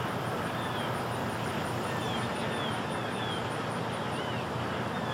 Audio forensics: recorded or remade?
recorded